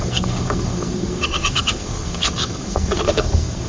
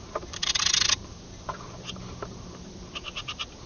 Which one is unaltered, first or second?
second